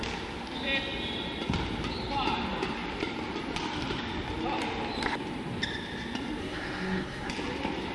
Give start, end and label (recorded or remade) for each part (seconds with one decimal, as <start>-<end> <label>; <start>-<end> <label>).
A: 0.0-6.4 recorded; 6.4-7.3 remade; 7.3-7.9 recorded